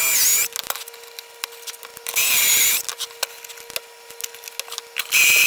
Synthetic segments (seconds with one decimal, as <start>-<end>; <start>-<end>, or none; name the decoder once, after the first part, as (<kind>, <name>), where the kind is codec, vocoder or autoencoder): none